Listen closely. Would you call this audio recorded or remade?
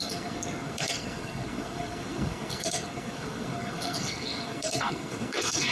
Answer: remade